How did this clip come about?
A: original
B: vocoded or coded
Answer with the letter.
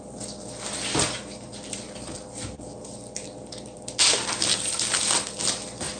A